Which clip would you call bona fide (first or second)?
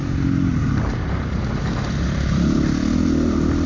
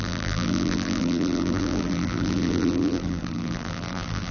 first